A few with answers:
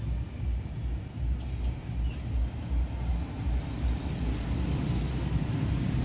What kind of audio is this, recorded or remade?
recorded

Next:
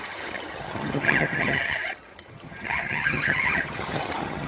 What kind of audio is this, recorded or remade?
remade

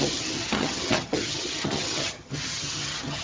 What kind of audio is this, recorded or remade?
remade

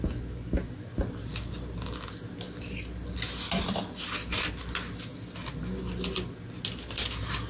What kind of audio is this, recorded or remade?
recorded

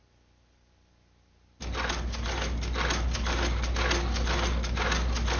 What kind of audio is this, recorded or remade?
recorded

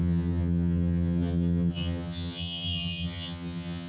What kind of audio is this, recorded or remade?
remade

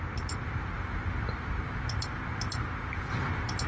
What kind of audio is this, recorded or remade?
recorded